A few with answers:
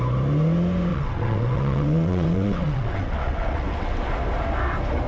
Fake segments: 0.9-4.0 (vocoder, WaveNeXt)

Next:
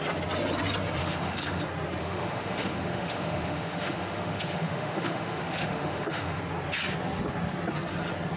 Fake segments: 1.0-1.6 (autoencoder, DAC-VAE); 2.0-6.4